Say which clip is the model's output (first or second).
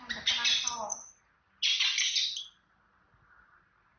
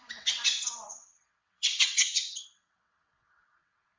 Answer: second